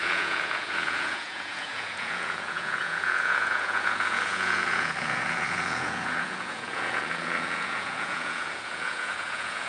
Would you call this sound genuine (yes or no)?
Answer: no